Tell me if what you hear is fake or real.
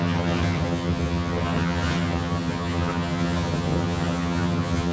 fake